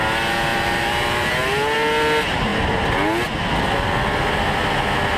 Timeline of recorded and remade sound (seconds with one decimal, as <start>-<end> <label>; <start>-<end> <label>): 0.0-0.5 recorded; 0.5-1.3 remade; 1.3-5.2 recorded